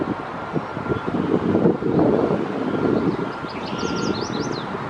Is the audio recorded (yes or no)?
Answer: yes